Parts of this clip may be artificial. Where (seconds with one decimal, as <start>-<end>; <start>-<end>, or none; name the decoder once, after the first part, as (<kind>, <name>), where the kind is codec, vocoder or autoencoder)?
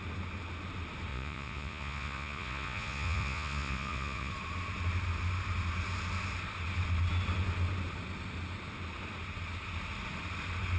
1.1-4.3 (vocoder, Vocos)